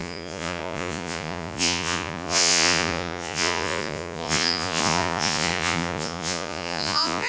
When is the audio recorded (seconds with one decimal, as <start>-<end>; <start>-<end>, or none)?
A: none